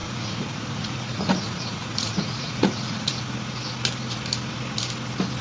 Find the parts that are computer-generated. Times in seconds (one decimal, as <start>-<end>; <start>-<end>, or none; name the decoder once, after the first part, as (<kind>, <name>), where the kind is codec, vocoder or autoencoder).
0.0-3.2 (vocoder, Vocos)